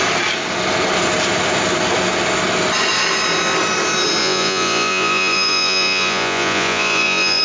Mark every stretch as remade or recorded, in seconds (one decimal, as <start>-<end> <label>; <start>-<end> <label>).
0.0-4.2 recorded; 4.2-7.4 remade